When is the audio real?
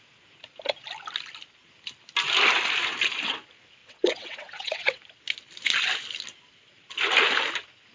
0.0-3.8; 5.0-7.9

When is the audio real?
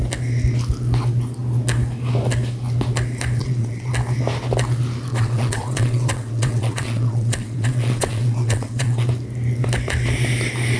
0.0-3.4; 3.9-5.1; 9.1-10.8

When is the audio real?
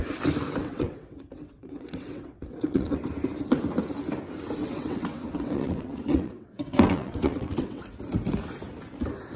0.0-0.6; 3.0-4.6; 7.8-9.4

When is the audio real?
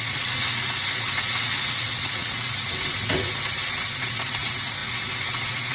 none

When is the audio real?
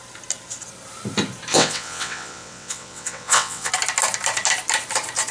0.0-1.5; 3.7-5.3